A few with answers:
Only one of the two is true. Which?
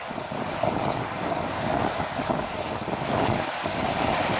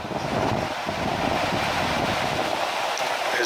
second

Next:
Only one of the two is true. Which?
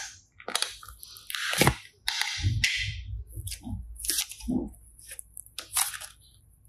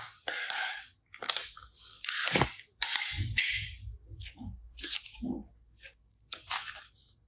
first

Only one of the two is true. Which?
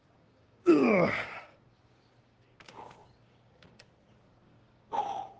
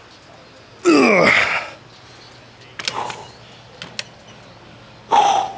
second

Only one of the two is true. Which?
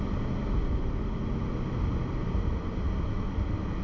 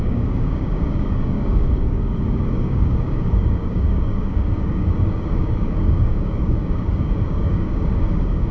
first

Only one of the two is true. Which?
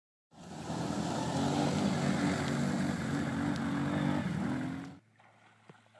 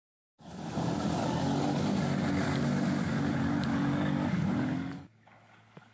first